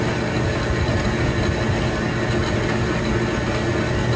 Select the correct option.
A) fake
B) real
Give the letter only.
B